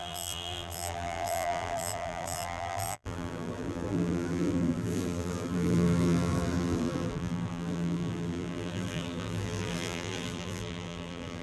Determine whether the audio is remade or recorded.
remade